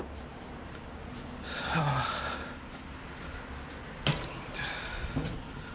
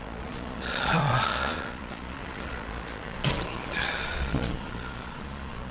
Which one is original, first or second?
first